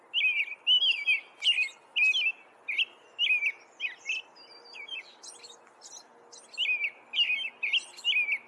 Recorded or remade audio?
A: recorded